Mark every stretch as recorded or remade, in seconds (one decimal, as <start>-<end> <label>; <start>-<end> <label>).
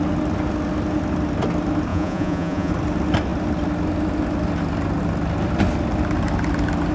0.0-1.9 recorded; 1.9-2.7 remade; 2.7-6.9 recorded